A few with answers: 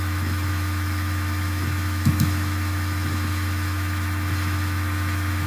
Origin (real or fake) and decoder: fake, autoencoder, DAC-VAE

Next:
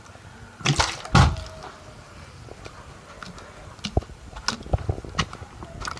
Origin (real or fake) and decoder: real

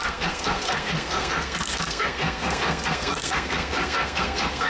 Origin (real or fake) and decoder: fake, codec, SNAC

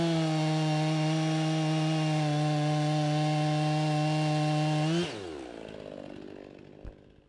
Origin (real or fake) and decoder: real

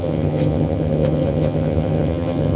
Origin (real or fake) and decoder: fake, vocoder, HiFi-GAN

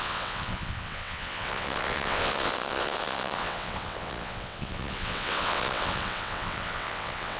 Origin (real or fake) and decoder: fake, vocoder, WaveNeXt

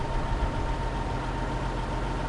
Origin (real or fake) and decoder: real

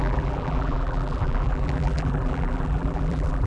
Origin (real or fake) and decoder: fake, vocoder, BigVGAN v2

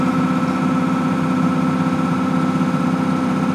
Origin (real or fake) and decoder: real